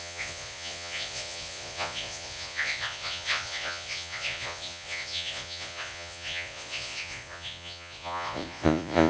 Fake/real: fake